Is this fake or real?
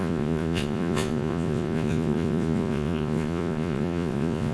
fake